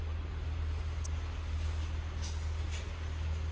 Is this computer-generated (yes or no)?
no